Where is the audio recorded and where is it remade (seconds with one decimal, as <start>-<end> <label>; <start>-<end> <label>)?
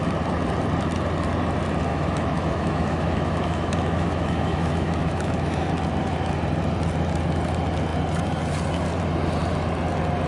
0.0-1.9 recorded; 1.9-5.7 remade; 5.7-10.3 recorded